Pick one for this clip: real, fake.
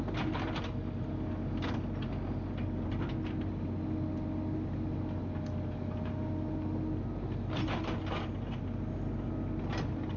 real